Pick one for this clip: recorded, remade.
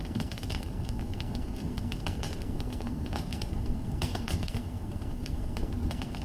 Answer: remade